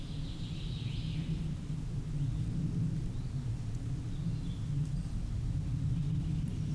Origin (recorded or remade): recorded